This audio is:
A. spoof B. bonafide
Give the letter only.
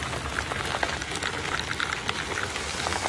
B